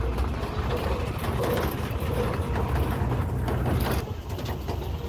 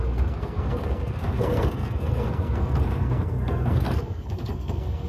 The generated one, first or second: second